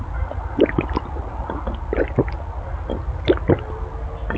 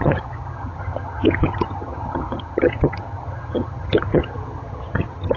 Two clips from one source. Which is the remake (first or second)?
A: second